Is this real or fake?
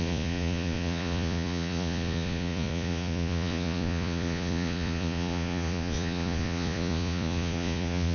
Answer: fake